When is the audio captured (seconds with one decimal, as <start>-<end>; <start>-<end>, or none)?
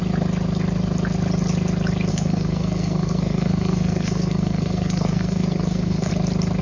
0.0-2.1; 6.1-6.6